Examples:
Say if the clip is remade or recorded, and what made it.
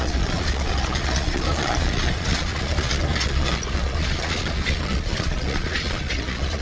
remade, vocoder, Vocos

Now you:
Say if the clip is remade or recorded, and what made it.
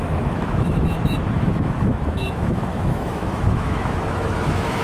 remade, autoencoder, DAC-VAE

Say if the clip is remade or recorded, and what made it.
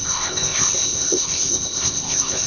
remade, codec, ZipCodec